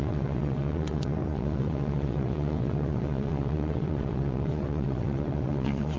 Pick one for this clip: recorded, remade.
remade